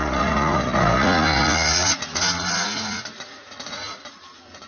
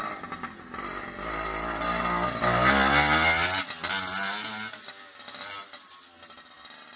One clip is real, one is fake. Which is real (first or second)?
second